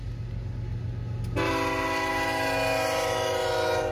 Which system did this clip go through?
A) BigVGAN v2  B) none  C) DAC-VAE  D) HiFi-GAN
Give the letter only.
B